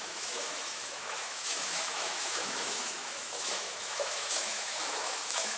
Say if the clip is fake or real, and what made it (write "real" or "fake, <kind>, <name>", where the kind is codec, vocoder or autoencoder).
fake, autoencoder, DAC-VAE